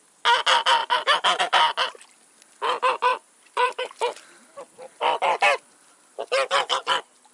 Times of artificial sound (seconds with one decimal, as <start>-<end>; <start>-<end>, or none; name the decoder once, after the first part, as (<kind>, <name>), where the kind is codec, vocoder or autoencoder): 0.8-1.4 (vocoder, BigVGAN v2); 3.1-3.8